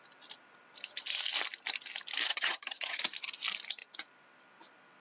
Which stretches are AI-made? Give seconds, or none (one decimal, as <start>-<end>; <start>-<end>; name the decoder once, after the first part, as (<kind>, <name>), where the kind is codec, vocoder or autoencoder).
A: 2.3-3.0 (vocoder, HiFi-GAN)